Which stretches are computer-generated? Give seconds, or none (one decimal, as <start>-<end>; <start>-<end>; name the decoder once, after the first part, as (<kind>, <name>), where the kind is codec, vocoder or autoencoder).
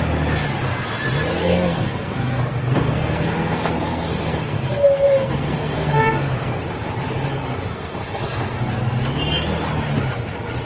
1.4-6.6 (codec, SNAC); 7.7-8.7